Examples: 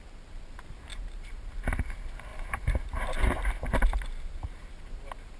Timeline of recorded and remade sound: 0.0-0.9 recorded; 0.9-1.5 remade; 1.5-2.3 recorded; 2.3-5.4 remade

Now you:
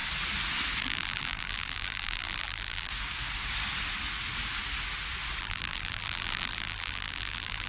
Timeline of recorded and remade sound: 0.0-0.8 recorded; 0.8-2.9 remade; 2.9-5.4 recorded; 5.4-7.7 remade